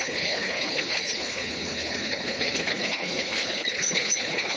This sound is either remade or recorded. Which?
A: remade